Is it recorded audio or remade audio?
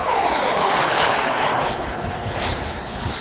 remade